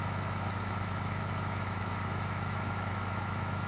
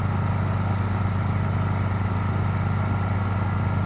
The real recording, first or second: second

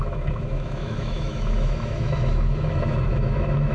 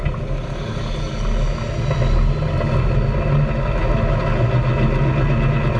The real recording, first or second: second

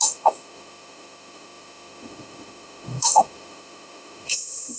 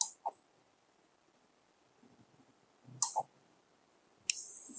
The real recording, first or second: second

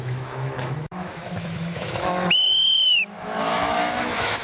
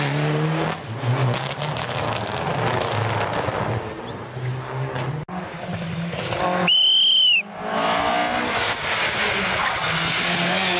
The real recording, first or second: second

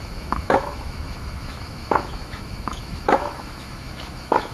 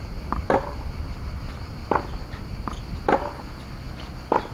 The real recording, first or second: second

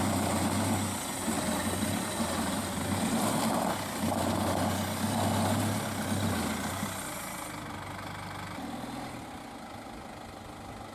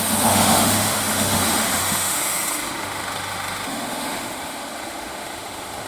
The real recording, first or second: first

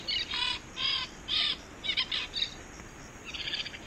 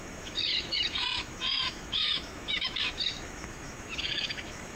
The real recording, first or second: first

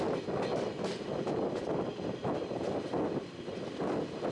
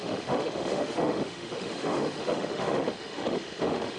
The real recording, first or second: first